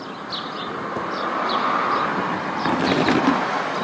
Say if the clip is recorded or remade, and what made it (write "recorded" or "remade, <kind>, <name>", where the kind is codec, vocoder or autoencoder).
recorded